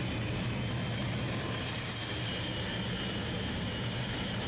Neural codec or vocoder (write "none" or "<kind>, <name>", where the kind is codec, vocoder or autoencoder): none